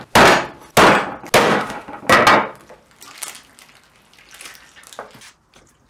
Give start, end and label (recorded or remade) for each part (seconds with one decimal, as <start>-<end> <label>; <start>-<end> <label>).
0.0-1.4 recorded; 1.4-2.0 remade; 2.0-5.9 recorded